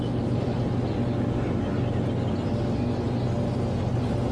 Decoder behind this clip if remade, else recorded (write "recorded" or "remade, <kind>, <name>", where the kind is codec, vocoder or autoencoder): recorded